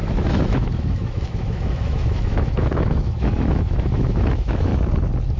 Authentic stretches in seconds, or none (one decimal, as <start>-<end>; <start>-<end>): 4.7-5.4